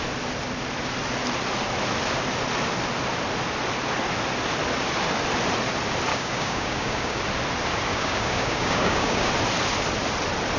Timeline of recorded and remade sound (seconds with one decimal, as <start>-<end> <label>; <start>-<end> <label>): 0.0-6.1 recorded; 6.1-7.2 remade; 7.2-7.9 recorded; 7.9-9.3 remade; 9.3-10.6 recorded